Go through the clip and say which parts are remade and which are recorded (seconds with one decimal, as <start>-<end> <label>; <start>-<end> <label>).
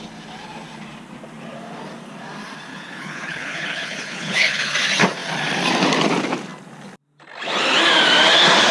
0.0-2.7 recorded; 2.7-4.7 remade; 4.7-8.7 recorded